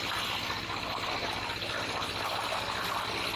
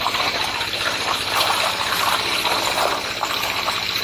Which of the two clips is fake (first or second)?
second